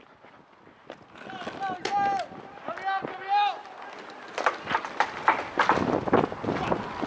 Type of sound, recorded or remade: recorded